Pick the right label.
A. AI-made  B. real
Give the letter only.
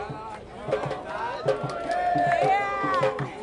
B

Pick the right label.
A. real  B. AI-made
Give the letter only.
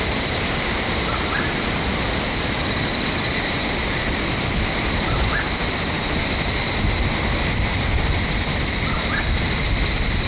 A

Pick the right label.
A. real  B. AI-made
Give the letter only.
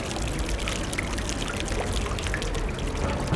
A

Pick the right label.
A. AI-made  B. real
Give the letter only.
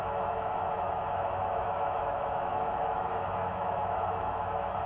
A